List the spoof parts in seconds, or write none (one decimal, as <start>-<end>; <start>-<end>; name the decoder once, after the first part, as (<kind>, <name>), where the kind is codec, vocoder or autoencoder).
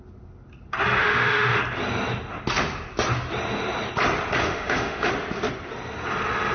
1.0-1.6 (autoencoder, DAC-VAE); 4.4-5.1